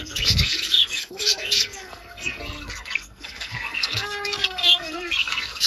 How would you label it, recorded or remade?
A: remade